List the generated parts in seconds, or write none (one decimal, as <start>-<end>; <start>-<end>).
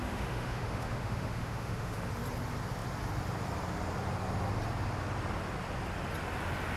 0.0-2.1